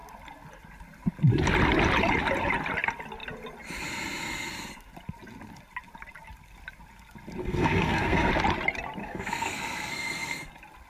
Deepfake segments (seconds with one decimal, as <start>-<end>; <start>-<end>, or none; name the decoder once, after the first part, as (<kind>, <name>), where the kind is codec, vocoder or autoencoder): 7.4-8.3 (codec, SNAC); 9.0-10.5

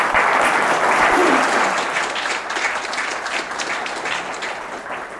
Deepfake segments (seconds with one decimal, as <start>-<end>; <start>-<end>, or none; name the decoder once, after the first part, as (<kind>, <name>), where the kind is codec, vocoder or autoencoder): none